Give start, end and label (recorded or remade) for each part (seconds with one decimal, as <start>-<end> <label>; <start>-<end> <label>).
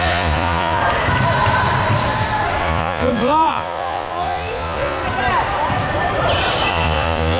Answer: 0.0-0.8 remade; 0.8-2.6 recorded; 2.6-5.0 remade; 5.0-6.7 recorded; 6.7-7.4 remade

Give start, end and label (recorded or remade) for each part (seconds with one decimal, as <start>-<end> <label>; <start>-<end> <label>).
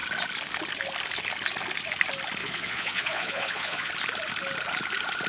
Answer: 0.0-2.4 recorded; 2.4-3.9 remade; 3.9-5.3 recorded